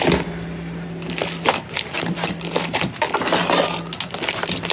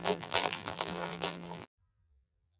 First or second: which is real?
first